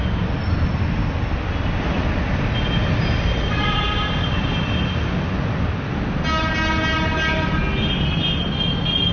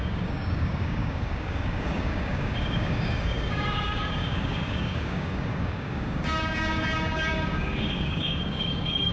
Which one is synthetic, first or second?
second